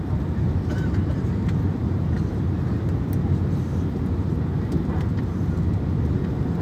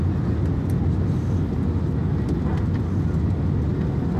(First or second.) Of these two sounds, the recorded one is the second